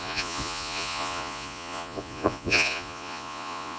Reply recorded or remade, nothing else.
remade